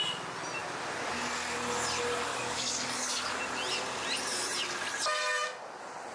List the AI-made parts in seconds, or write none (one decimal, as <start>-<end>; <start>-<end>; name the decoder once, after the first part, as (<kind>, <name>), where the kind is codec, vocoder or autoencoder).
2.3-3.3 (codec, DAC)